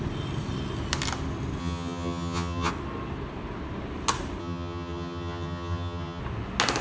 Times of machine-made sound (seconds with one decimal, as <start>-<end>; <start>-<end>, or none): 1.6-2.7; 4.4-6.2